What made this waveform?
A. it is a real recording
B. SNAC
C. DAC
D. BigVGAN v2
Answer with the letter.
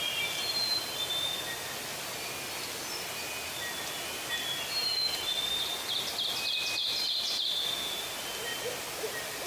A